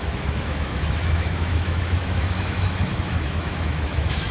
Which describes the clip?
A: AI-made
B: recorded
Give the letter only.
A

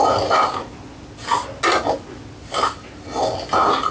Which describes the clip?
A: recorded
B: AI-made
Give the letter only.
A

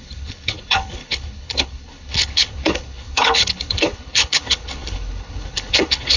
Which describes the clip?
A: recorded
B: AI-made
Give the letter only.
B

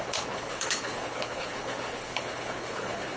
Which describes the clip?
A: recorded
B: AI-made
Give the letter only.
B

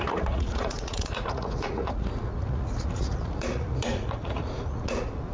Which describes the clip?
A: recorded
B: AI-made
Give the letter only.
B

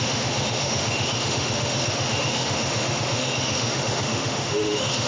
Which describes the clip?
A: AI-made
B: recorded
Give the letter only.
A